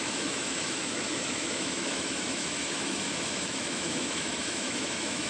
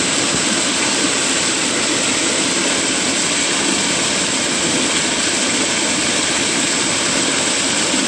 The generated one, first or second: first